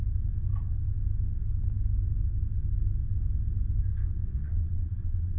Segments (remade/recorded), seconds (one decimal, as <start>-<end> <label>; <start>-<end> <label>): 0.0-4.3 recorded; 4.3-5.4 remade